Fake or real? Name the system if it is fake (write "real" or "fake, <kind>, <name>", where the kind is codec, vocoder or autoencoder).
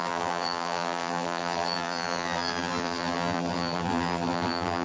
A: fake, vocoder, BigVGAN v2